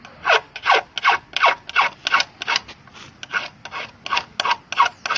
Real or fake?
real